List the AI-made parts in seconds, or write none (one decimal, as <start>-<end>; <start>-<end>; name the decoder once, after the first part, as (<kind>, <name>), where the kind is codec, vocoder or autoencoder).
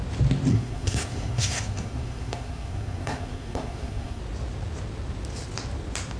0.5-4.2 (codec, SNAC)